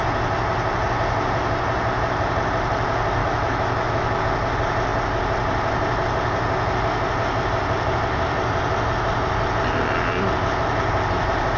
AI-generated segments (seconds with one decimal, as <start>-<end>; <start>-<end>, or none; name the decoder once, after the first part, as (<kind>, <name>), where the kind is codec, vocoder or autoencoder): 3.2-4.2 (autoencoder, DAC-VAE)